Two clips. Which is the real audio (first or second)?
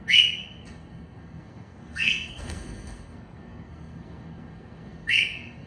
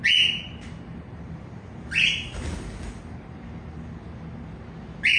second